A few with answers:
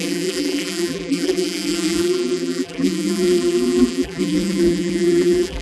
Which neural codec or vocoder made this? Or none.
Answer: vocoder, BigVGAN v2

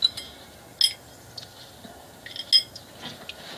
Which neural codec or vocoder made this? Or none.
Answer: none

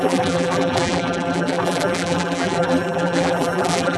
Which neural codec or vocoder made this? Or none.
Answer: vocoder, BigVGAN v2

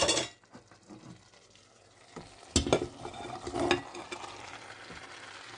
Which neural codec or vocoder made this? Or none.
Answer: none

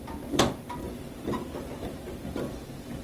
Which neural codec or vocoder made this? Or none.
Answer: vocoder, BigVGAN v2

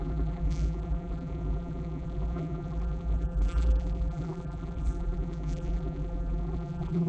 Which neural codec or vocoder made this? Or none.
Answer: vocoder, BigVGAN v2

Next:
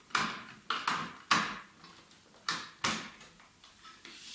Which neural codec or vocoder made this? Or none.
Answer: none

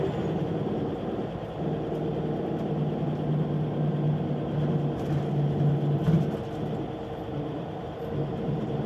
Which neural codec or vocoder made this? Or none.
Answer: none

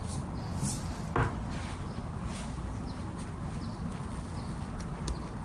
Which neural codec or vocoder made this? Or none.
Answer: none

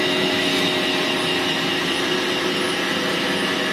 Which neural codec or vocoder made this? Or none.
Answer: none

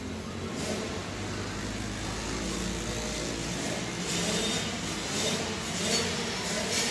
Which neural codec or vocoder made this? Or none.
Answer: none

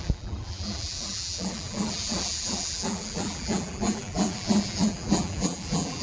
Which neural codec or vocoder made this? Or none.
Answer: vocoder, BigVGAN v2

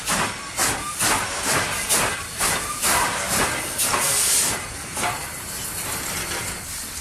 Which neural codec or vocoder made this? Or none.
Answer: vocoder, BigVGAN v2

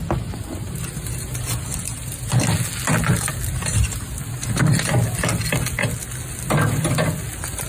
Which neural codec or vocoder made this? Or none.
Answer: none